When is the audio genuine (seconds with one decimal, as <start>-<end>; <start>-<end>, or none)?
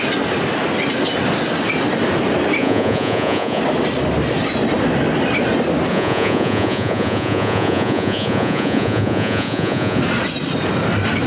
0.0-2.6; 3.6-5.9; 10.0-11.3